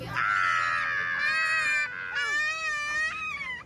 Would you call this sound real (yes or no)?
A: yes